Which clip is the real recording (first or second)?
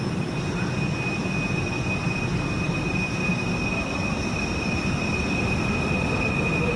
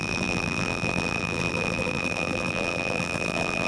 first